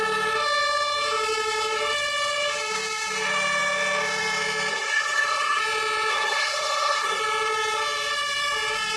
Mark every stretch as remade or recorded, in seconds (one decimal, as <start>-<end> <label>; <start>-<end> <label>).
0.0-4.7 recorded; 4.7-5.6 remade; 5.6-6.1 recorded; 6.1-7.2 remade; 7.2-9.0 recorded